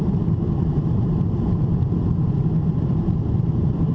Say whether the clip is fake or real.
fake